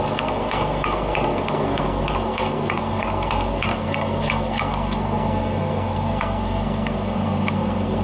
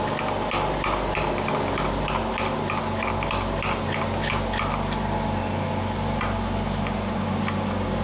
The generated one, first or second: first